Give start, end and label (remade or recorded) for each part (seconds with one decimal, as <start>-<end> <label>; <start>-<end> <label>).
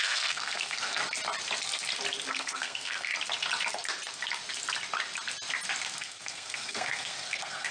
0.0-1.0 remade; 1.0-2.3 recorded; 2.3-3.1 remade; 3.1-6.0 recorded; 6.0-7.7 remade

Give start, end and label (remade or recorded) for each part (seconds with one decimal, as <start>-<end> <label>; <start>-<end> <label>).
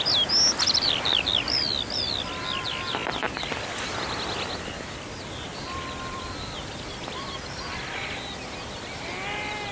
0.0-5.5 recorded; 5.5-9.1 remade; 9.1-9.7 recorded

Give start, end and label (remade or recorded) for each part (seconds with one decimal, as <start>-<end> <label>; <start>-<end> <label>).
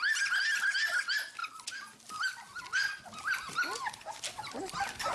0.0-5.1 recorded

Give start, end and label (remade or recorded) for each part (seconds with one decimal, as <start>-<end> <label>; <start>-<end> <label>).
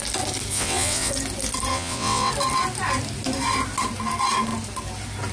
0.0-0.5 recorded; 0.5-1.1 remade; 1.1-1.7 recorded; 1.7-2.3 remade; 2.3-5.3 recorded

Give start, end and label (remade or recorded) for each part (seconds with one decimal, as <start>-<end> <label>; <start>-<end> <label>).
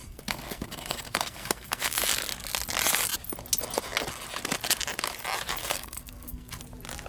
0.0-2.0 remade; 2.0-5.6 recorded; 5.6-6.6 remade; 6.6-7.1 recorded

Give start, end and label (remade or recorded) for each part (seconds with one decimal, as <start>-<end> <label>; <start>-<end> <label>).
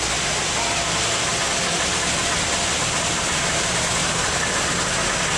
0.0-5.4 recorded